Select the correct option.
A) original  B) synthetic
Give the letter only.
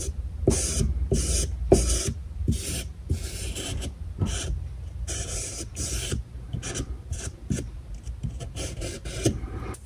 B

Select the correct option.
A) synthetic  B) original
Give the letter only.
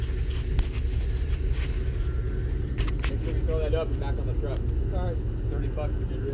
B